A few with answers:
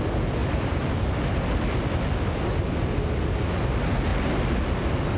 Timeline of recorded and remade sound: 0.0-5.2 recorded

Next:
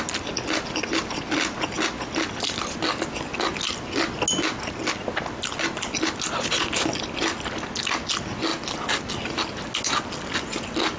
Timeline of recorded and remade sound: 0.0-11.0 recorded

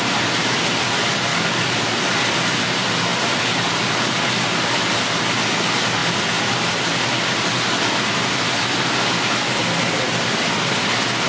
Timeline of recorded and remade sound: 0.0-1.3 recorded; 1.3-1.9 remade; 1.9-11.3 recorded

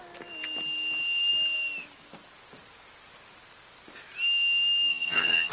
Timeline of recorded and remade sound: 0.0-4.9 recorded; 4.9-5.5 remade

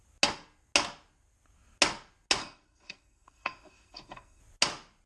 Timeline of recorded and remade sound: 0.0-2.4 recorded; 2.4-4.4 remade; 4.4-5.1 recorded

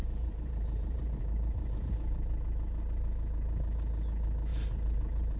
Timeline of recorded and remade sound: 0.0-1.9 remade; 1.9-4.5 recorded; 4.5-5.4 remade